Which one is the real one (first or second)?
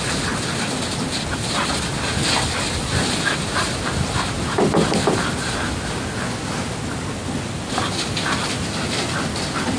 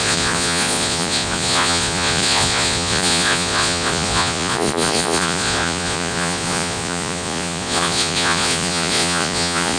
first